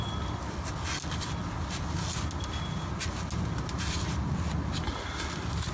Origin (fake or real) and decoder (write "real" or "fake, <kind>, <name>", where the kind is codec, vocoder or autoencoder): real